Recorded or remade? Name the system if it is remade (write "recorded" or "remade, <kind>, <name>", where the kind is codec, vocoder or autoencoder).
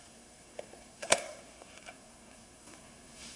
remade, codec, SNAC